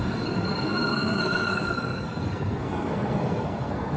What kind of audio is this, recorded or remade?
remade